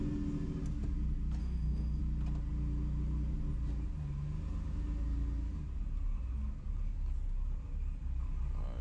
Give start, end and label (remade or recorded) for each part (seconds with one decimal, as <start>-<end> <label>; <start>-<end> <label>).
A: 0.0-1.4 recorded; 1.4-2.0 remade; 2.0-8.8 recorded